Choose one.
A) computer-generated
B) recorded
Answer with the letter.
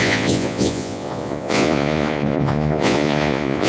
A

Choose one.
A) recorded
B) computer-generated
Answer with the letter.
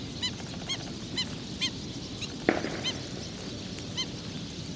A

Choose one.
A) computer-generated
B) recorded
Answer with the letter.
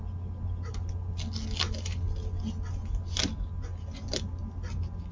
B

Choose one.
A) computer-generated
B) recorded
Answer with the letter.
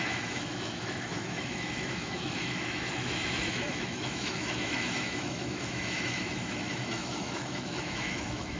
A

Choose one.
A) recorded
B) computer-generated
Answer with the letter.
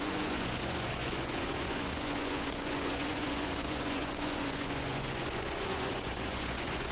B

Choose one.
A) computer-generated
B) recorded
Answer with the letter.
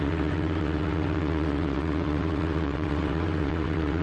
A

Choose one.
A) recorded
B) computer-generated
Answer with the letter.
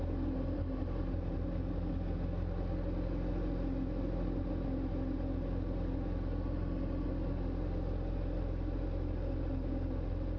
A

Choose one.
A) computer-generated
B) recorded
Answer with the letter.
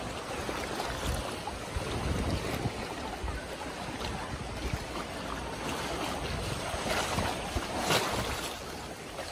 B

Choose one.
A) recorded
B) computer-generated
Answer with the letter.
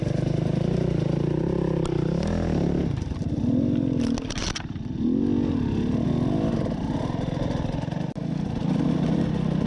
A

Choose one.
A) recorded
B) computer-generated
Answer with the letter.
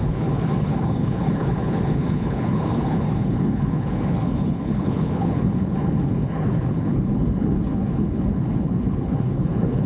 B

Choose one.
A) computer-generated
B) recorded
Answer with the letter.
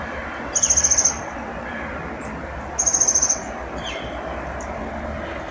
B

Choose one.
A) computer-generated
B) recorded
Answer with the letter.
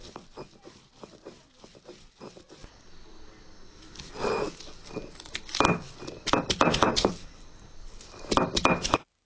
B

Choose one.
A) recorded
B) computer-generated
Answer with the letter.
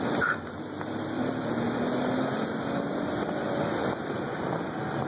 A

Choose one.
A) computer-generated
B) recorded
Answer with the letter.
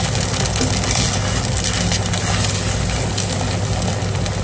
B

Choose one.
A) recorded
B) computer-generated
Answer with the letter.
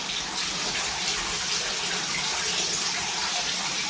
A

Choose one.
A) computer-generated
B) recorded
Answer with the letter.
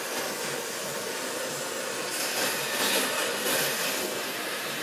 B